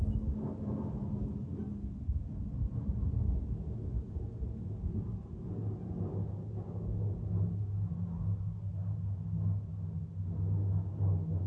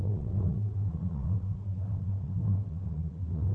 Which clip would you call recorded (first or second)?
first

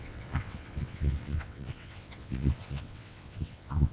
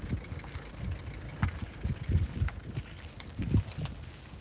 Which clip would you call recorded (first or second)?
second